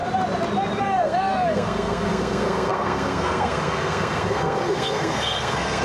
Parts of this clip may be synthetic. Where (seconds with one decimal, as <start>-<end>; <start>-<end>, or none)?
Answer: 0.8-5.8